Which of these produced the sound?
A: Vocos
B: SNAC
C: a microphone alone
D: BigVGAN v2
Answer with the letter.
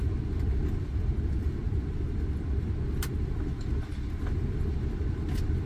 C